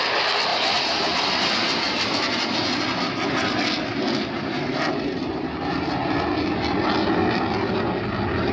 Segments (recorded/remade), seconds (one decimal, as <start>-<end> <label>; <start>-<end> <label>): 0.0-8.5 recorded